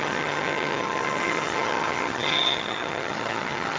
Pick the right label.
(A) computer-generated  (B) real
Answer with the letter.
A